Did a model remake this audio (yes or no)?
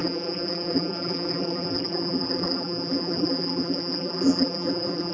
yes